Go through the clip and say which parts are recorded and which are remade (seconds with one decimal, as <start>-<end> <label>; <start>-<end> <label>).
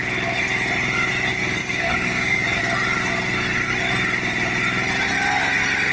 0.0-1.6 recorded; 1.6-2.6 remade; 2.6-5.9 recorded